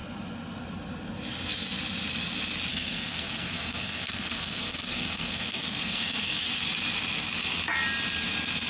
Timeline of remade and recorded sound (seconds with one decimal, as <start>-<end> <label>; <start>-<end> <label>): 0.0-2.7 recorded; 2.7-6.4 remade; 6.4-8.7 recorded